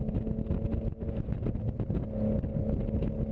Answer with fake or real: real